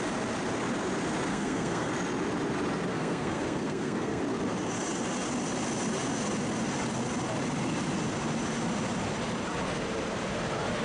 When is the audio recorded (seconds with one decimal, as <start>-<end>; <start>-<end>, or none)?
0.0-1.3; 1.9-2.9; 4.2-10.8

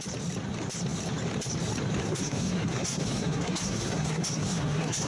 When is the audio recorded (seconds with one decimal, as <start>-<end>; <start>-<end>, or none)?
0.0-2.0

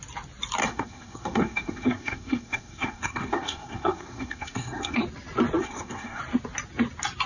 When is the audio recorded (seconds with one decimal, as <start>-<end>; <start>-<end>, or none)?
0.0-0.6; 5.0-5.6; 6.2-7.3

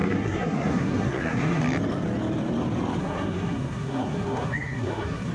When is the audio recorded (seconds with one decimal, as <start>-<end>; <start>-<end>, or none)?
1.6-3.0

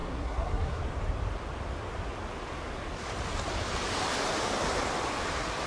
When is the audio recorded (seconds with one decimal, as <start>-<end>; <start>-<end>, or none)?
0.8-5.7